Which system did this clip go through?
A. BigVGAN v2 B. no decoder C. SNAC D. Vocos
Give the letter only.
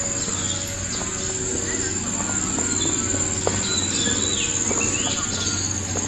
B